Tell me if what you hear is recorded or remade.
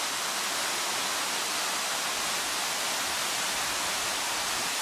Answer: recorded